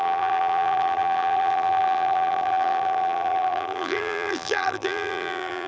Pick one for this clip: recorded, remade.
remade